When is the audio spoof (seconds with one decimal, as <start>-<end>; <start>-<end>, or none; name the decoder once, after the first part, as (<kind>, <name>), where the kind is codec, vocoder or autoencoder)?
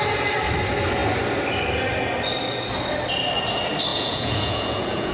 3.9-5.1 (vocoder, Vocos)